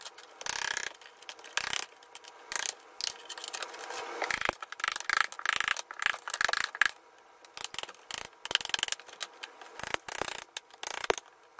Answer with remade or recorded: recorded